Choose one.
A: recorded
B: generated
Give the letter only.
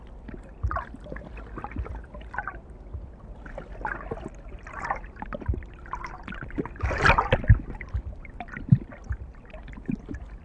A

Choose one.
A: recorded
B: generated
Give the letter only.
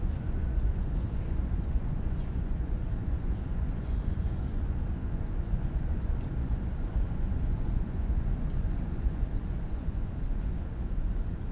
B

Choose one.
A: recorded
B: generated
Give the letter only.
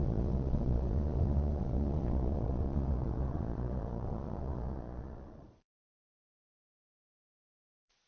B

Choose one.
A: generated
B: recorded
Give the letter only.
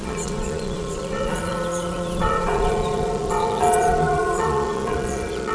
A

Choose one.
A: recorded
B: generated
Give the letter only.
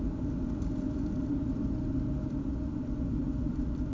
A